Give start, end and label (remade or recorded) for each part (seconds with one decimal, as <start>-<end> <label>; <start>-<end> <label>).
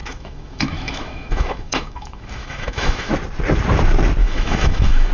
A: 0.0-3.1 remade; 3.1-4.2 recorded; 4.2-5.1 remade